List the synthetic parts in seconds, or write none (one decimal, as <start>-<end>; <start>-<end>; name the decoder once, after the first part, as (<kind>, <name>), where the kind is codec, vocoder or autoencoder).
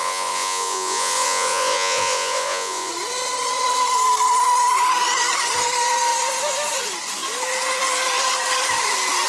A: 0.0-2.9 (vocoder, Vocos)